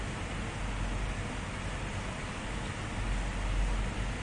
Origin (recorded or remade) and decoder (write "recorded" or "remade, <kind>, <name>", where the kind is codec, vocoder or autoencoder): recorded